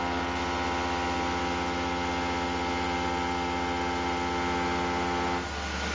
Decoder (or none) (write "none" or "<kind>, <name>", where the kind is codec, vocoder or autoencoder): none